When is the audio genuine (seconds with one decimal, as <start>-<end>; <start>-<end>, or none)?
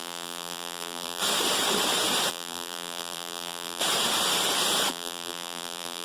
1.2-2.3; 3.8-4.9